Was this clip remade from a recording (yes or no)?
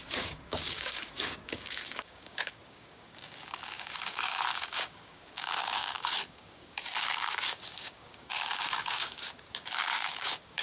yes